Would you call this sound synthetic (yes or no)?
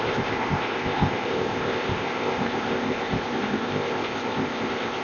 yes